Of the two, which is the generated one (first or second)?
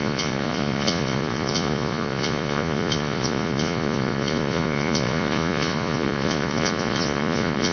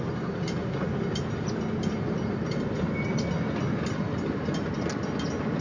first